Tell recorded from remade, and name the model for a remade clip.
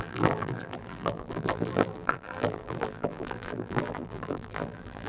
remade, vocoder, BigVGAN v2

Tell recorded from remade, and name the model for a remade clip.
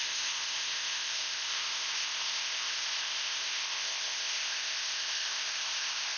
remade, codec, ZipCodec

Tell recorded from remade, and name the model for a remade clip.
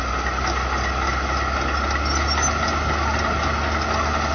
recorded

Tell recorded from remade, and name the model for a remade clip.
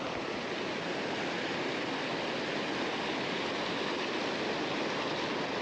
recorded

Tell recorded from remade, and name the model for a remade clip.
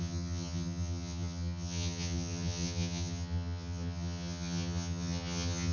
remade, vocoder, HiFi-GAN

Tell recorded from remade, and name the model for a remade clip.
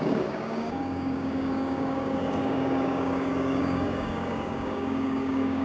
remade, codec, DAC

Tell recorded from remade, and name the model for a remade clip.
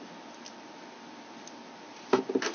recorded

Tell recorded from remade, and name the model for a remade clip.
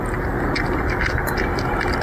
recorded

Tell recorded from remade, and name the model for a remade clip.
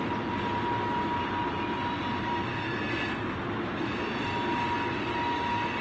recorded